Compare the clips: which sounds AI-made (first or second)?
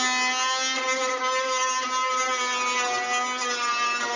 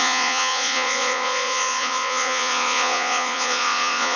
second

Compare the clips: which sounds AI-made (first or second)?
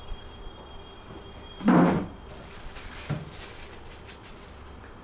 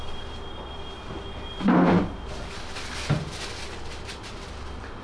first